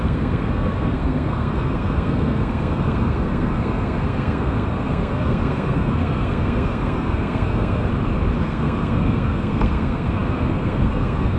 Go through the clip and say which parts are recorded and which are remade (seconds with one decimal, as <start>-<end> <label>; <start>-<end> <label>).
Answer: 0.0-7.9 remade; 7.9-8.4 recorded; 8.4-11.4 remade